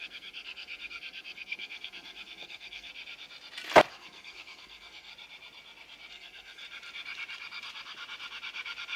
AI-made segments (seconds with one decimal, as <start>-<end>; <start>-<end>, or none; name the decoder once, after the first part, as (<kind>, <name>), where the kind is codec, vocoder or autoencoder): 0.0-2.9 (codec, SNAC); 3.9-5.1; 6.1-6.6